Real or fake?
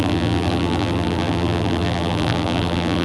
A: fake